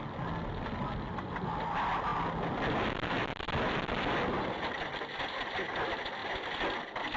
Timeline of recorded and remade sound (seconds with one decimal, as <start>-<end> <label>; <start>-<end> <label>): 0.0-7.2 recorded